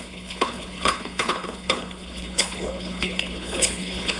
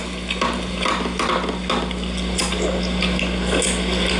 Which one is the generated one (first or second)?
first